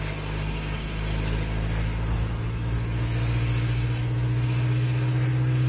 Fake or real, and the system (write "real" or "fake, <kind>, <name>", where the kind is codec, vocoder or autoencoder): real